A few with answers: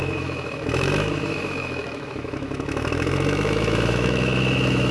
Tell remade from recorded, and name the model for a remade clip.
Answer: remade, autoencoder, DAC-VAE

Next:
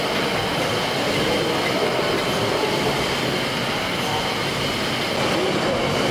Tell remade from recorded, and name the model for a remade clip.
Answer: recorded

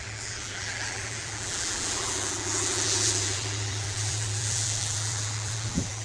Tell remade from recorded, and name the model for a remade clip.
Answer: remade, vocoder, BigVGAN v2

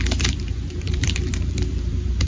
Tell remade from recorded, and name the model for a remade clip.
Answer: remade, vocoder, BigVGAN v2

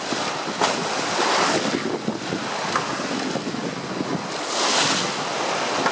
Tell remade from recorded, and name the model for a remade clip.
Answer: recorded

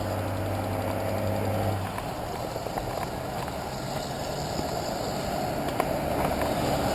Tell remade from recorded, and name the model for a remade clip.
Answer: recorded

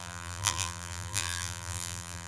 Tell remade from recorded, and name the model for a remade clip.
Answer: remade, vocoder, BigVGAN v2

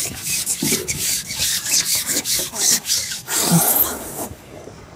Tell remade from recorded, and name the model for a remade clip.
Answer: remade, codec, DAC